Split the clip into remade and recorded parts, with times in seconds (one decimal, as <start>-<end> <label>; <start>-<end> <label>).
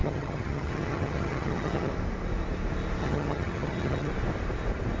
0.0-1.9 remade; 1.9-3.0 recorded; 3.0-4.1 remade; 4.1-5.0 recorded